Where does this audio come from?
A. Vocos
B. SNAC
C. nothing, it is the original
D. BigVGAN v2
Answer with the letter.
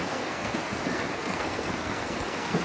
B